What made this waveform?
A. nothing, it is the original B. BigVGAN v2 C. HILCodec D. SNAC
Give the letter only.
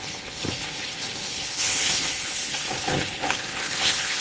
C